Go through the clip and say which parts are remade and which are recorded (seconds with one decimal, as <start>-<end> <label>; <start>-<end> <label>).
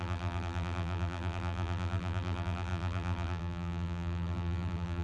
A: 0.0-5.0 remade